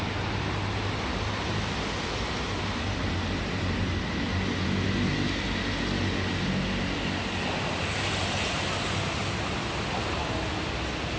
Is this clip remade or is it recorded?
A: recorded